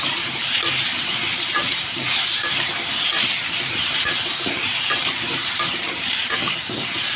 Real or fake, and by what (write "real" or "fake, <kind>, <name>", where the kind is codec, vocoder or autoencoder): fake, vocoder, BigVGAN v2